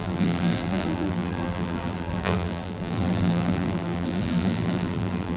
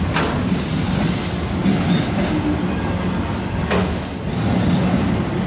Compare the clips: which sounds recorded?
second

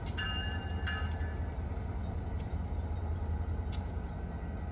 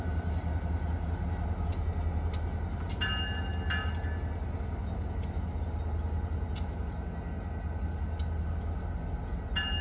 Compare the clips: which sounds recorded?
second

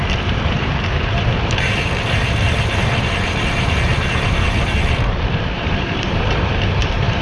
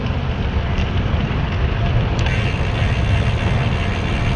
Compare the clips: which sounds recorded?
second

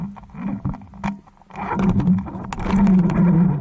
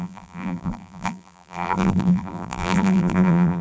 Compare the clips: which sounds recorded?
first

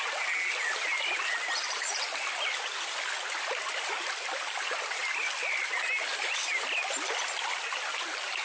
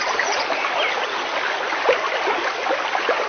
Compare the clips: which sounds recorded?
second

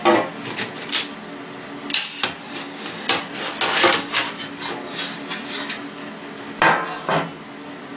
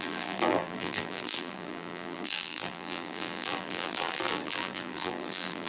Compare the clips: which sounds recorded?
first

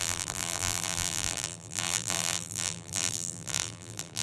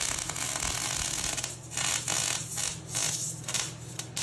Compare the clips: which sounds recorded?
second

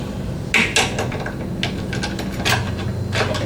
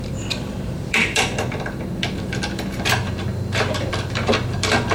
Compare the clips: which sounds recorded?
first